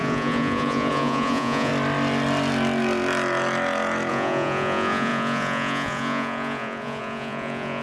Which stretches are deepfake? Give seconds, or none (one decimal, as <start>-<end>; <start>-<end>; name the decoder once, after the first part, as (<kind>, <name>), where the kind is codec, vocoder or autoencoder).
0.0-1.7 (vocoder, Vocos); 4.1-7.8